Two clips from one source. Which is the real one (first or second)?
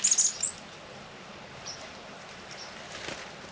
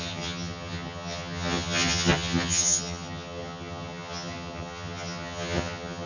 first